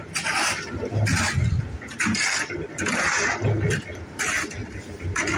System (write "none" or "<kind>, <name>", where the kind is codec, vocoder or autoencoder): none